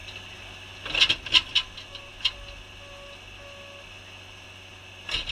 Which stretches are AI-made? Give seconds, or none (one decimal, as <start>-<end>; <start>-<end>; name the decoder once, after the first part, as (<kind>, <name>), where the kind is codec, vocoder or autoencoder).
none